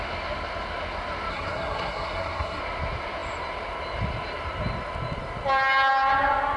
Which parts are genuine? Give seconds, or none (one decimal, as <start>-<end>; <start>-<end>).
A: 0.0-1.3; 2.6-6.6